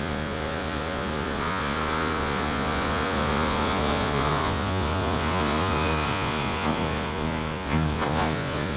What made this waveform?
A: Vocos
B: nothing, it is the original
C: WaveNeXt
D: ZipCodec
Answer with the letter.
A